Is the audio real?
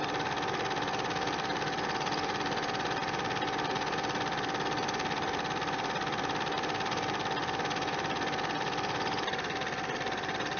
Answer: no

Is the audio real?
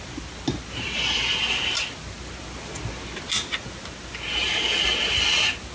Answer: yes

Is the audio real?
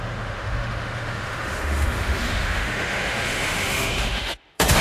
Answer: no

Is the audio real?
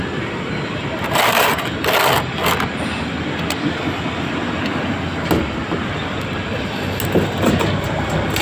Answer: yes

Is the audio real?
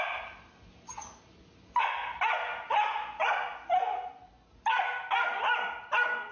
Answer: yes